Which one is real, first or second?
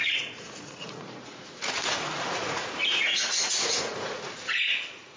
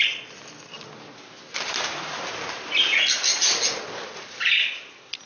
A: second